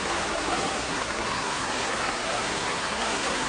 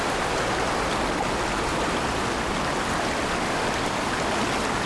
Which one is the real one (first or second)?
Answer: second